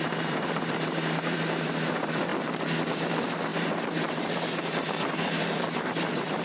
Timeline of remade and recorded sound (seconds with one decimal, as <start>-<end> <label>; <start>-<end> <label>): 0.0-2.3 remade; 2.3-3.1 recorded; 3.1-6.4 remade